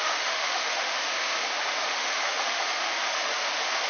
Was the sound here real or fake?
fake